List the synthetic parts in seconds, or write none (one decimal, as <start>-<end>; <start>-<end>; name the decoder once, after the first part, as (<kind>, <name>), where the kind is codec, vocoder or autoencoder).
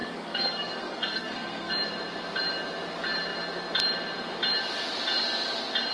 0.0-1.7 (codec, SNAC)